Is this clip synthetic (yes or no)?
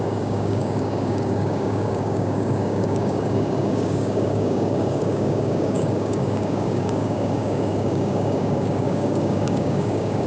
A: yes